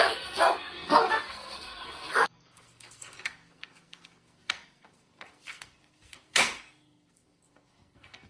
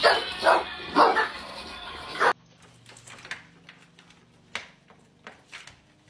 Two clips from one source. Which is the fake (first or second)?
first